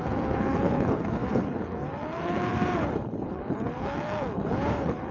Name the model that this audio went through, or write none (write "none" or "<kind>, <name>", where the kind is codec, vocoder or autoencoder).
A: codec, HILCodec